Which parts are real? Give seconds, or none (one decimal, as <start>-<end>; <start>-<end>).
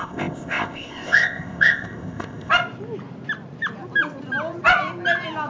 2.5-5.5